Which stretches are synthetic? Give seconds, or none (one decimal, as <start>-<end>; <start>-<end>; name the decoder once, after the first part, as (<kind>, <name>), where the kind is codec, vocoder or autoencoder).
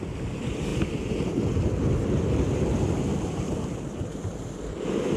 none